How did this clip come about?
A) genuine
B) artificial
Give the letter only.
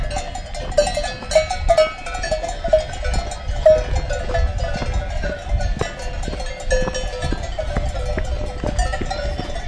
A